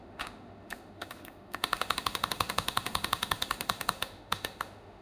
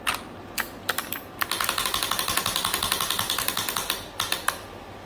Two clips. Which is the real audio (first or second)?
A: second